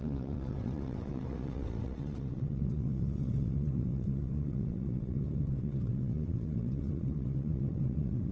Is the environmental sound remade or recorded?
remade